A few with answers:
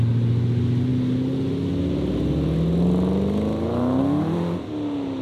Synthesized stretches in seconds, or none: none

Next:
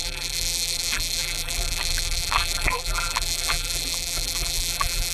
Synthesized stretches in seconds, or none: 0.0-5.1 (vocoder, BigVGAN v2)

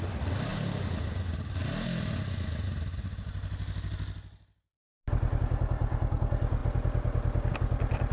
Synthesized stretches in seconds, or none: 0.0-0.5 (vocoder, BigVGAN v2); 1.0-1.6; 3.9-8.1

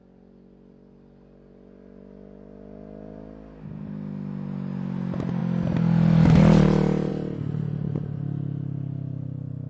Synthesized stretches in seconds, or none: none

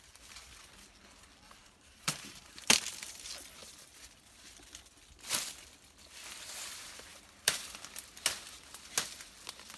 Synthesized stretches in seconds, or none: 1.6-2.5 (vocoder, BigVGAN v2); 7.1-7.7

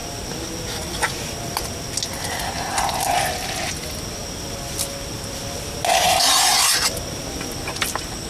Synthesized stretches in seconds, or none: none

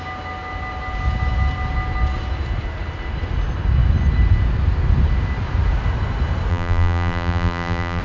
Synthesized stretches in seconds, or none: 6.5-8.0 (vocoder, BigVGAN v2)

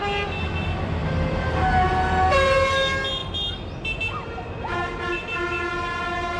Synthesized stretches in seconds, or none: none